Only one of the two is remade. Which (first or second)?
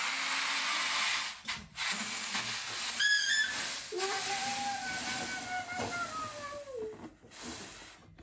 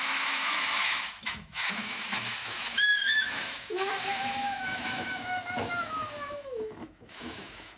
second